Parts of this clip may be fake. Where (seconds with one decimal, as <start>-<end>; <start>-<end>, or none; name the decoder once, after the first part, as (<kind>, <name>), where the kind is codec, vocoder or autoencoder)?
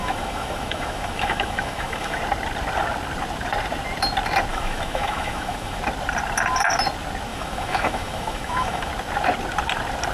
0.0-2.2 (autoencoder, DAC-VAE); 4.5-5.8; 7.3-8.9